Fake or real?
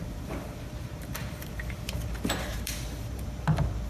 fake